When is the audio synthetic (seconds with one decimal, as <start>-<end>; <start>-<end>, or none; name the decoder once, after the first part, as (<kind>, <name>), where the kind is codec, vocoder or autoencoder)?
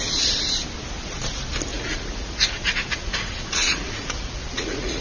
1.7-5.0 (vocoder, Vocos)